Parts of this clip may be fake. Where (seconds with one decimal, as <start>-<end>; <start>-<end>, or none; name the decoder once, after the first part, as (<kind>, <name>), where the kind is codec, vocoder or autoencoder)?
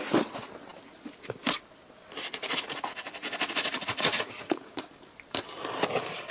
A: 2.4-4.9 (vocoder, Vocos)